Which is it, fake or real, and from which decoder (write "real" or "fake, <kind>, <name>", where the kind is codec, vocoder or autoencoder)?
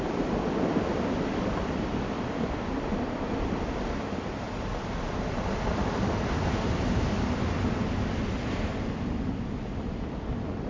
real